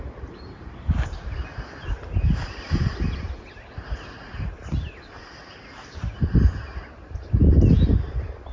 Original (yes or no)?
yes